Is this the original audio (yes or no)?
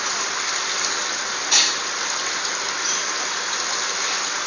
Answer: yes